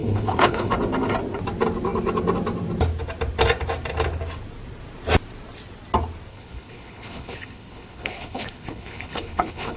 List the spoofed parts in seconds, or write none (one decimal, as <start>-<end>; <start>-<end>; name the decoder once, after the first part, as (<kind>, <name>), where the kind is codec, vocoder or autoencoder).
0.0-0.7 (codec, HILCodec); 6.3-9.8